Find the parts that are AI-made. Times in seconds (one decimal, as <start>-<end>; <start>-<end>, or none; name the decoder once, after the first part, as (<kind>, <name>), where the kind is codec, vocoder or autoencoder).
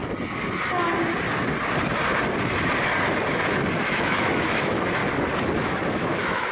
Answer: 3.9-5.0 (autoencoder, DAC-VAE); 5.9-6.5